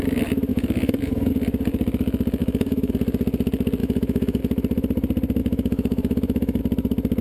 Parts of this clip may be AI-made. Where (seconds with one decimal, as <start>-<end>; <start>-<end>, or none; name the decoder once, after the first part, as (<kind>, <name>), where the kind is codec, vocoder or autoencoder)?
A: 0.5-1.3 (autoencoder, DAC-VAE); 2.4-2.9; 3.8-4.4; 5.4-6.6